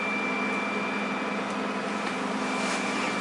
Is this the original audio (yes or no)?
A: no